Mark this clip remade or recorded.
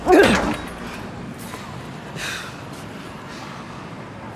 recorded